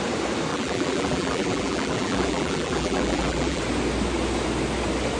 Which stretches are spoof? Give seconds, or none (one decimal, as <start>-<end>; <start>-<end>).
0.5-3.6